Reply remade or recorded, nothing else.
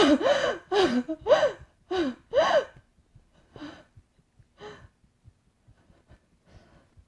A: recorded